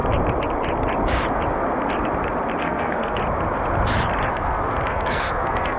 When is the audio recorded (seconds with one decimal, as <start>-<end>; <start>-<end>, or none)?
0.0-2.6; 3.2-4.3